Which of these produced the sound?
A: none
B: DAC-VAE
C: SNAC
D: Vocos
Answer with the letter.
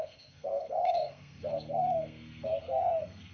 C